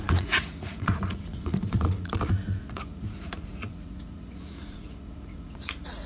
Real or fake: fake